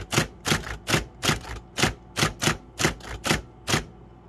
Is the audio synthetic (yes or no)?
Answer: no